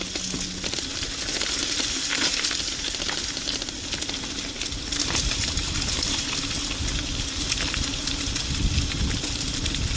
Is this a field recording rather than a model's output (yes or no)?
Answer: yes